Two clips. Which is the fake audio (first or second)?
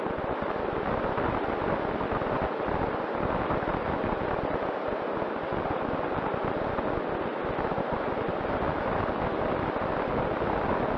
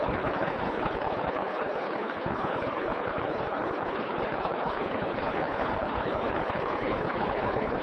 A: second